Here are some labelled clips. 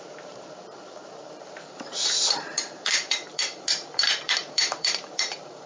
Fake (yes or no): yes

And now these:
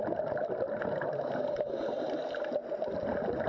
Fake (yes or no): no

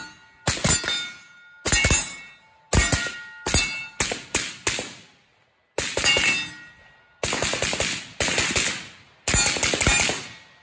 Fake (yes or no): no